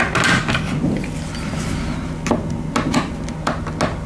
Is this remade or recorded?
recorded